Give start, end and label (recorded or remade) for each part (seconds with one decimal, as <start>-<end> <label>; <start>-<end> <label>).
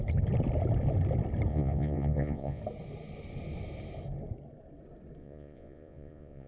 0.0-1.5 recorded; 1.5-2.6 remade; 2.6-5.2 recorded; 5.2-6.5 remade